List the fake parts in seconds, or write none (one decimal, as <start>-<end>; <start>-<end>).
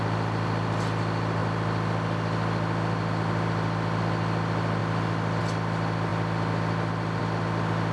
none